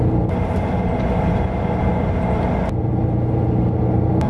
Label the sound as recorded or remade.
recorded